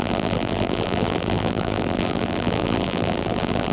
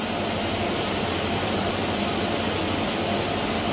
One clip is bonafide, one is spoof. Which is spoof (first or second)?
first